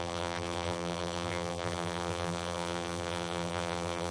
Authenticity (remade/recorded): remade